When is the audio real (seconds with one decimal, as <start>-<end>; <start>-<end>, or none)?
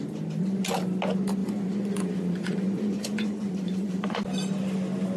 0.0-1.4; 4.2-5.2